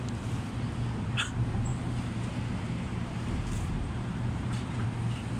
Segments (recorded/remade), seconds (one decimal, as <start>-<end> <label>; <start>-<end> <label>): 0.0-1.7 recorded; 1.7-4.9 remade; 4.9-5.4 recorded